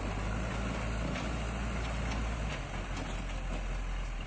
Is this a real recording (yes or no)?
yes